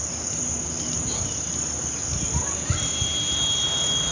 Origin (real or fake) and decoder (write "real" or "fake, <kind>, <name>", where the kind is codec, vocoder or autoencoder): real